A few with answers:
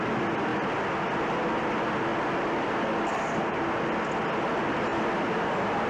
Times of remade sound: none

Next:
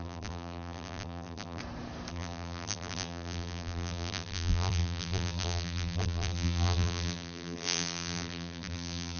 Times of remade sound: 0.0-1.6 (vocoder, BigVGAN v2); 2.1-9.2